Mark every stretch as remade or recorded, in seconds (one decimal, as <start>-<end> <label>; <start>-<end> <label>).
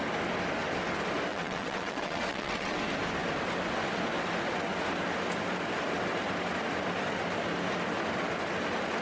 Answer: 0.0-1.3 recorded; 1.3-2.8 remade; 2.8-9.0 recorded